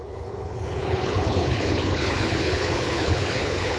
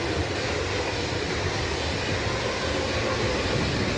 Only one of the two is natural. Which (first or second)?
second